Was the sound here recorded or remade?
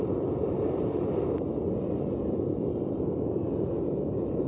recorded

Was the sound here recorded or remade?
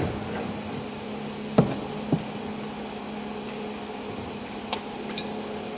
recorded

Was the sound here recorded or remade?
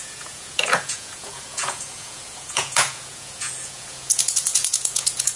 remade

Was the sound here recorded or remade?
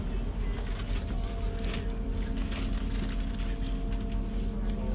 recorded